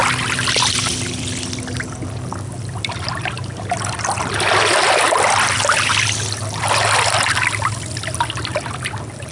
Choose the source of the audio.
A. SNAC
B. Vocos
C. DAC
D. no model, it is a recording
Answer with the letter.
D